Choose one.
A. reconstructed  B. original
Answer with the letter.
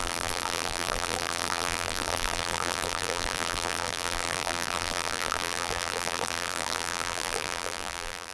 A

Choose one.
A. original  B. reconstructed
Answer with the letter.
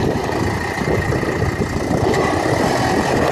A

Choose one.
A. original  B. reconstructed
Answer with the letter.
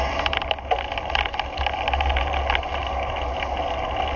A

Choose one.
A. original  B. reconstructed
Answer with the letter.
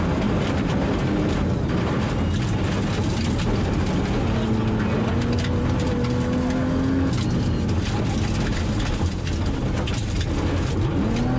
A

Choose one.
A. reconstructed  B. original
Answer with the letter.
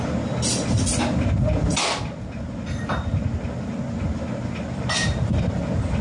B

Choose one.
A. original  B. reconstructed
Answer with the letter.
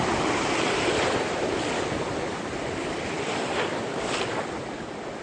A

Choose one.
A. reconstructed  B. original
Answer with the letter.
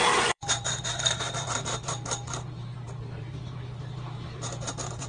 A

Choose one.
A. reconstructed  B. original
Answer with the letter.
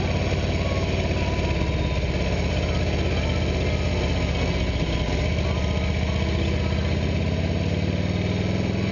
B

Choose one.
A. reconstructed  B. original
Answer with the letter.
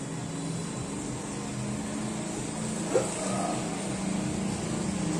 B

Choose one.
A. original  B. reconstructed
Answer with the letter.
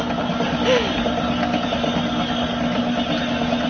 A